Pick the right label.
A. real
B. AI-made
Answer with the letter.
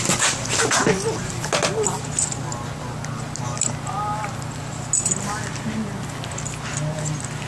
A